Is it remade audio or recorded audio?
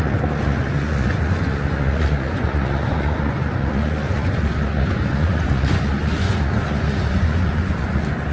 remade